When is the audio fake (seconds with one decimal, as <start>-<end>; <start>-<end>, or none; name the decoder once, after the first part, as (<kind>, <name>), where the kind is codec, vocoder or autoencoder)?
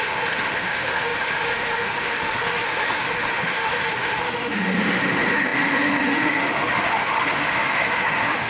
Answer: 0.0-8.5 (autoencoder, DAC-VAE)